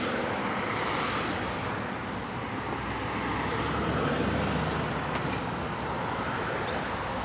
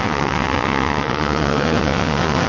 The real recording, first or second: first